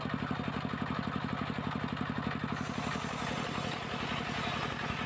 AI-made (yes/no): no